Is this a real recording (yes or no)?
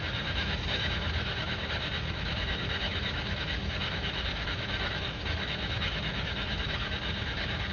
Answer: no